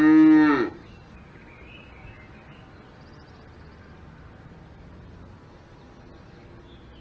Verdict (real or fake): real